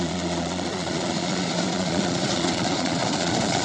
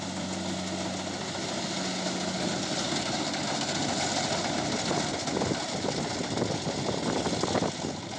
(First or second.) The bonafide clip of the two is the second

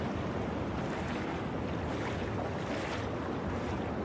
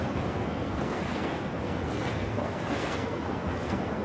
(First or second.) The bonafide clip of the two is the first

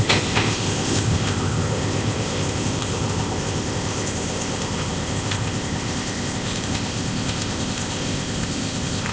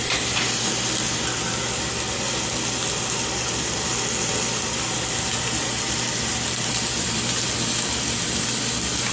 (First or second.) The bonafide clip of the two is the second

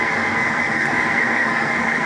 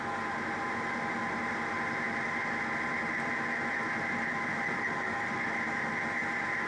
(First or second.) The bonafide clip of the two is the second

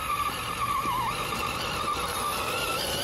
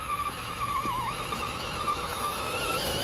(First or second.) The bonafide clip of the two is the first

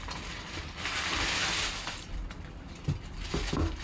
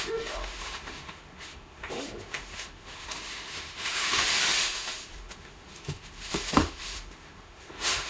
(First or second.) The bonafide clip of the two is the first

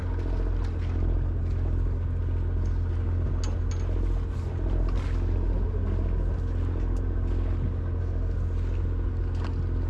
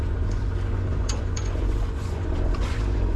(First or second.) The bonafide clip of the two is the first